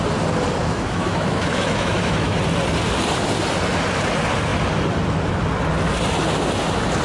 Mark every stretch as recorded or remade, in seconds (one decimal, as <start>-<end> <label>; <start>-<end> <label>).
0.0-0.6 recorded; 0.6-2.4 remade; 2.4-7.0 recorded